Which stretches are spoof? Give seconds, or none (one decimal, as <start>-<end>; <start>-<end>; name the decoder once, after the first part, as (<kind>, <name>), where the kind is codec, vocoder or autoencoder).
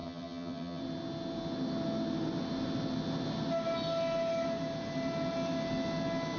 0.0-0.8 (vocoder, HiFi-GAN)